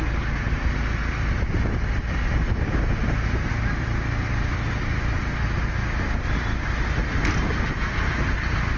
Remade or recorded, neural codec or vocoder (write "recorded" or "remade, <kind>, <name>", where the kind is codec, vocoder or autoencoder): recorded